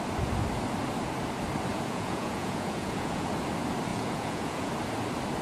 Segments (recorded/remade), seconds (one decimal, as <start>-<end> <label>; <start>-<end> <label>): 0.0-1.7 recorded; 1.7-3.3 remade; 3.3-3.9 recorded; 3.9-4.7 remade; 4.7-5.4 recorded